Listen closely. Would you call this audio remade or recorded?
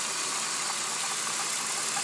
recorded